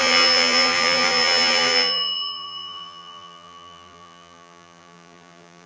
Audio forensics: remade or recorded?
remade